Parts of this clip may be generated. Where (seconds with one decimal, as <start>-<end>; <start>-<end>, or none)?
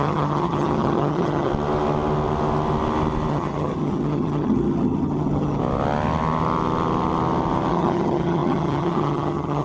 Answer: 0.0-1.5; 3.3-5.6; 7.7-9.6